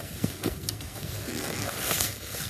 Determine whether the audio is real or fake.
fake